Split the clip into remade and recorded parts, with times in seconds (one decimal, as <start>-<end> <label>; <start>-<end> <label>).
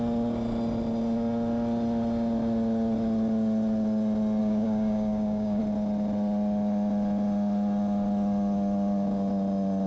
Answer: 0.0-4.4 recorded; 4.4-5.6 remade; 5.6-9.9 recorded